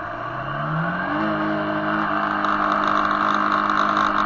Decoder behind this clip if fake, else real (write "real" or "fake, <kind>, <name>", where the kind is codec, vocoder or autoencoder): real